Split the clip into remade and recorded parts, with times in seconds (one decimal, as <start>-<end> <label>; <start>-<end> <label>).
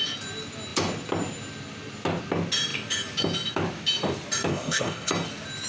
0.0-4.5 recorded; 4.5-5.1 remade; 5.1-5.7 recorded